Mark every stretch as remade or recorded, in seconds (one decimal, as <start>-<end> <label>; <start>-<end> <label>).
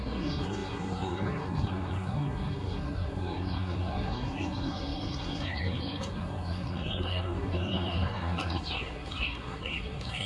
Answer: 0.0-10.3 remade